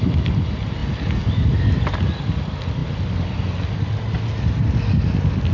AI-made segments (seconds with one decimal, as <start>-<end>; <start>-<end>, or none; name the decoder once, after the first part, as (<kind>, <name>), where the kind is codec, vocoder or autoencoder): none